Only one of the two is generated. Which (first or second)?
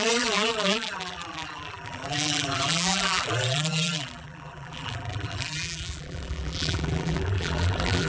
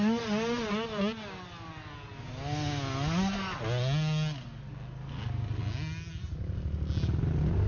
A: first